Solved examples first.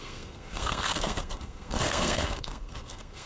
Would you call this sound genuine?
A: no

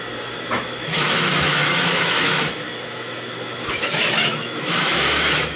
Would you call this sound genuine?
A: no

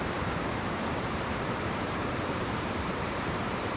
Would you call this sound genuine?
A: no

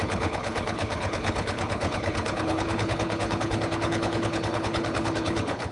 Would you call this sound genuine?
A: no